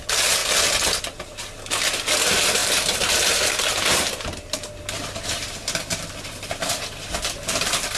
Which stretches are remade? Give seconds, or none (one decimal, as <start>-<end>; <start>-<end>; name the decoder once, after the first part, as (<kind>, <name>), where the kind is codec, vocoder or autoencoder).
2.6-4.7 (vocoder, BigVGAN v2)